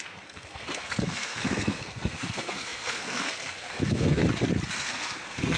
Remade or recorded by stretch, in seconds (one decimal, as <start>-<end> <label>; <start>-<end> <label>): 0.0-4.2 remade; 4.2-4.7 recorded; 4.7-5.6 remade